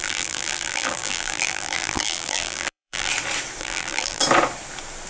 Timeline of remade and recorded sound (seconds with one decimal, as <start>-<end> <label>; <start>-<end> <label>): 0.0-3.1 remade; 3.1-3.6 recorded; 3.6-4.2 remade; 4.2-5.1 recorded